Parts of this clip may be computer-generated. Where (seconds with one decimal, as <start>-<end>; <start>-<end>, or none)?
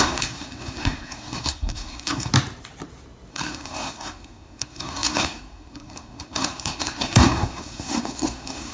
0.0-2.3; 3.3-8.7